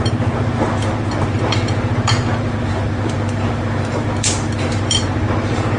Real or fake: fake